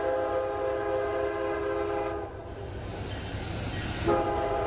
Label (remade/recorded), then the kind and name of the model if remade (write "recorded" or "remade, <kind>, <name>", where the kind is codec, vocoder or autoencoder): recorded